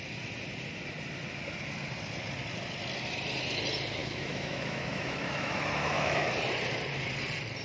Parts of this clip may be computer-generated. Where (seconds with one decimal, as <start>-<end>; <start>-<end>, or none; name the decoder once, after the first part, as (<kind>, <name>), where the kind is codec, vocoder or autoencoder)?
4.0-6.3 (autoencoder, DAC-VAE)

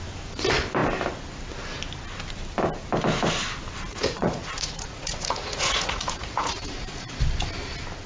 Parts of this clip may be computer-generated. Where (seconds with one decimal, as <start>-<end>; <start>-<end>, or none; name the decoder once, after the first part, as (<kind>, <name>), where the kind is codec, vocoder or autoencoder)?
3.9-7.2 (vocoder, Vocos)

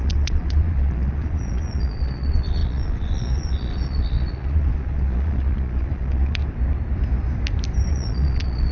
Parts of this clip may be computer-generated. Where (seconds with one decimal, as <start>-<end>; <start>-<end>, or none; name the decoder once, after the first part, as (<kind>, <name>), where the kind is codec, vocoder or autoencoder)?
0.0-6.4 (vocoder, Vocos); 7.9-8.7

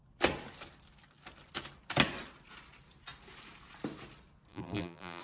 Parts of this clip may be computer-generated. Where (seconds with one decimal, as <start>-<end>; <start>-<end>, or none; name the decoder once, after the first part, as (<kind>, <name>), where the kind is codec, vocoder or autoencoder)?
4.5-5.2 (vocoder, BigVGAN v2)

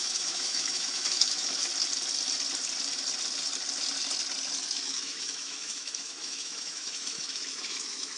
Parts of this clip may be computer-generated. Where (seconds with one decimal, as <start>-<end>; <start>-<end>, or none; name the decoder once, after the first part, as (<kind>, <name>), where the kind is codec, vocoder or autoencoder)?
0.0-1.7 (autoencoder, DAC-VAE); 4.7-8.2

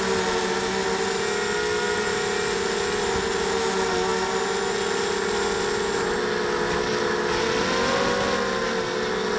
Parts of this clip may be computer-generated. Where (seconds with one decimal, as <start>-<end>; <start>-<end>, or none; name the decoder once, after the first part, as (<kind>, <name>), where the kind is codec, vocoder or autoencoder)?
none

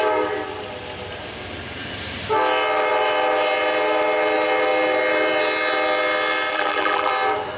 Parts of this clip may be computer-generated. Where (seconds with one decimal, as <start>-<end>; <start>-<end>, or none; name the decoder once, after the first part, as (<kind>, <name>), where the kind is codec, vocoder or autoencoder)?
6.5-7.1 (vocoder, BigVGAN v2)

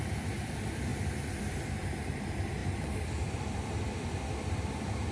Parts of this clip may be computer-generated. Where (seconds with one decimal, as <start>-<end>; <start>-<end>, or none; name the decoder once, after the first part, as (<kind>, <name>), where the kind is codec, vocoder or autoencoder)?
0.0-5.1 (vocoder, BigVGAN v2)